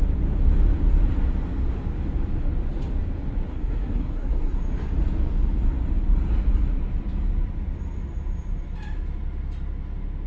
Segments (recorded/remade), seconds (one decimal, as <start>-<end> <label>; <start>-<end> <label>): 0.0-3.5 recorded; 3.5-4.6 remade; 4.6-10.3 recorded